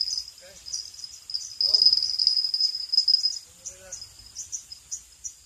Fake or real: real